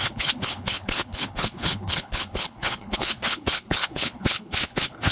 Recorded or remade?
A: remade